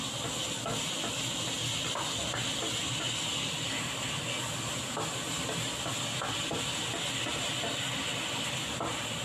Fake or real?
real